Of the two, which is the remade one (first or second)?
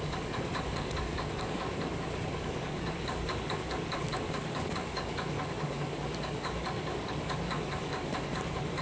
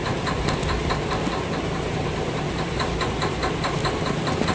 first